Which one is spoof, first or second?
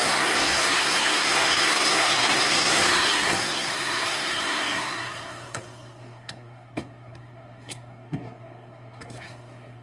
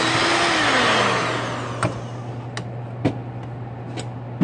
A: first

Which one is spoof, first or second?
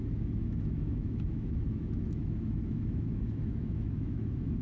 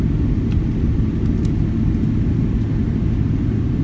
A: first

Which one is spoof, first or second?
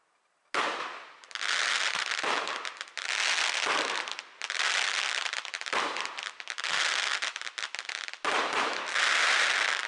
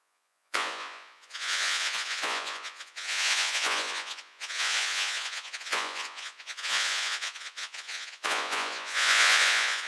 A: second